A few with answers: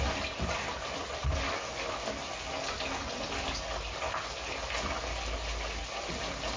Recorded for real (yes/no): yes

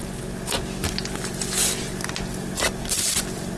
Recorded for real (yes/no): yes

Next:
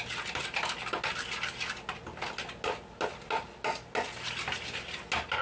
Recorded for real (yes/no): yes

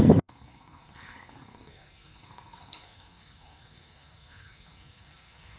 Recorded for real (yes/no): no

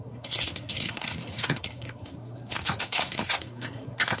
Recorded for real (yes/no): no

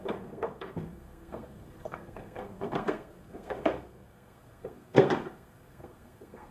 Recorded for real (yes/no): no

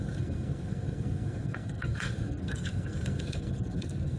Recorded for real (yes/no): no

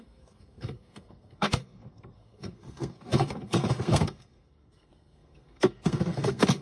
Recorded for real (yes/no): no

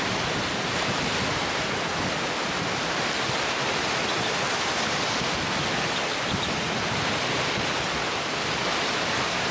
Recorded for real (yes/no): yes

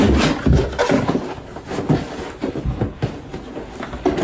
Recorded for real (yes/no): yes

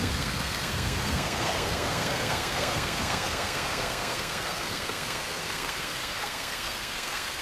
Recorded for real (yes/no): no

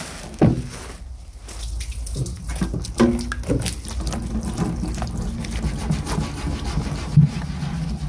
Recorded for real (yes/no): yes